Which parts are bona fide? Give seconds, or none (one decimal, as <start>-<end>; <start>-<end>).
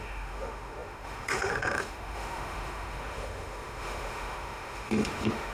none